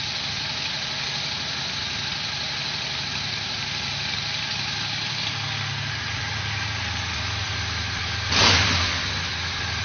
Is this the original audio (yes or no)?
no